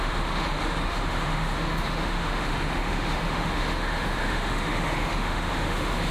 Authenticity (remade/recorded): remade